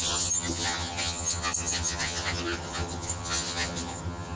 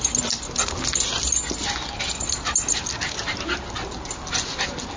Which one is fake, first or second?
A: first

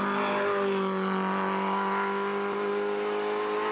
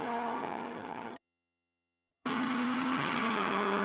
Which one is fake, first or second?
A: second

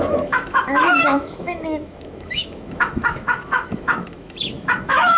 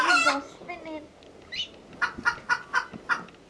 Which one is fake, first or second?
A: first